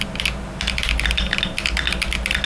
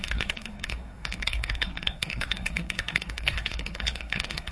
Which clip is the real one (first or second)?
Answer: first